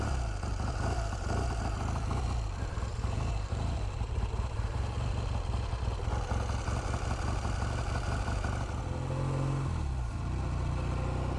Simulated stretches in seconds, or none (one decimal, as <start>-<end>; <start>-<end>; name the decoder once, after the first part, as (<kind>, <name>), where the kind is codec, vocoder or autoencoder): 2.9-4.8 (vocoder, BigVGAN v2)